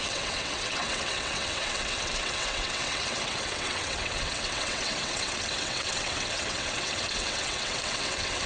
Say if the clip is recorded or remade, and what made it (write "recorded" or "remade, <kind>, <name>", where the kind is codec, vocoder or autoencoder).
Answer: remade, vocoder, WaveNeXt